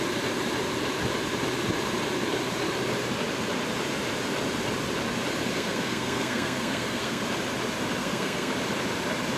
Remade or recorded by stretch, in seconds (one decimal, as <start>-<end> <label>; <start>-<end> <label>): 0.0-5.5 recorded; 5.5-7.2 remade; 7.2-8.0 recorded; 8.0-8.5 remade; 8.5-9.4 recorded